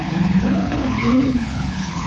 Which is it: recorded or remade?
remade